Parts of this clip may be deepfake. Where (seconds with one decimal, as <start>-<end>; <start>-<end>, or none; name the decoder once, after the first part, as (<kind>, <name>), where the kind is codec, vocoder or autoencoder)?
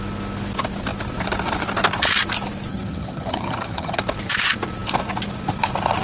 2.7-4.0 (vocoder, HiFi-GAN)